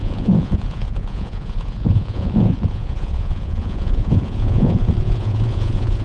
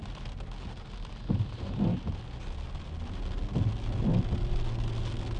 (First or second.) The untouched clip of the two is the second